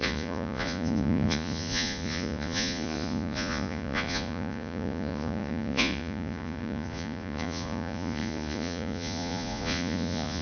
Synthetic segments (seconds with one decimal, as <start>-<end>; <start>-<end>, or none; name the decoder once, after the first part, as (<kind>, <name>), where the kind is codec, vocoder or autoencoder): 0.0-10.4 (vocoder, Vocos)